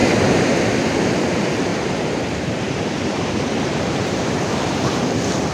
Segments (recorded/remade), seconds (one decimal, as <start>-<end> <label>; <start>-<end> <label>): 0.0-0.6 remade; 0.6-1.7 recorded; 1.7-5.0 remade; 5.0-5.5 recorded